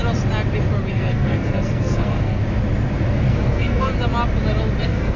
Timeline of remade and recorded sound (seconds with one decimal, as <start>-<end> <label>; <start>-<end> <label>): 0.0-0.9 recorded; 0.9-2.4 remade; 2.4-3.1 recorded; 3.1-3.9 remade; 3.9-4.8 recorded; 4.8-5.2 remade